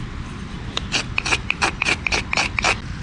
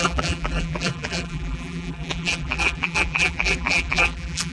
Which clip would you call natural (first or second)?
first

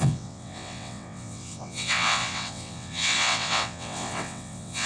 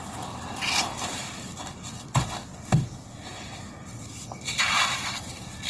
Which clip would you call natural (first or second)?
second